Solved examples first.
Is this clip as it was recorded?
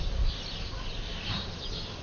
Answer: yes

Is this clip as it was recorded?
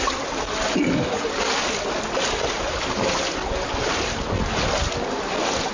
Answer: yes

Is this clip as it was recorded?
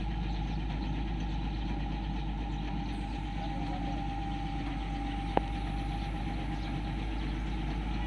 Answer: yes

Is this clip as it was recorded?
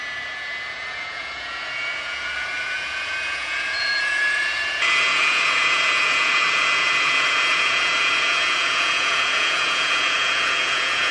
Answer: no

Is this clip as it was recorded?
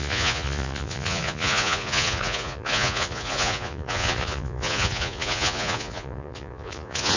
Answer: no